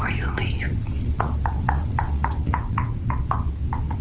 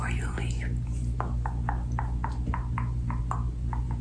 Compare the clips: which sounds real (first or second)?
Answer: second